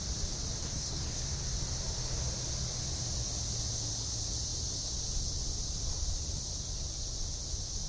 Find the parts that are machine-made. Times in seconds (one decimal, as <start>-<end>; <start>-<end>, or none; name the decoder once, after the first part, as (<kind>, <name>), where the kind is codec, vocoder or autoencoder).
0.6-1.2 (codec, SNAC)